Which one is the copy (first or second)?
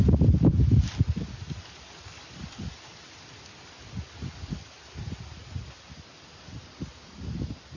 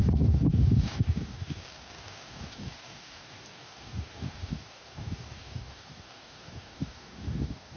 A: second